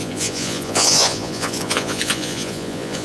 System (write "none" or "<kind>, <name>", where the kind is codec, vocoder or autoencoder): vocoder, Vocos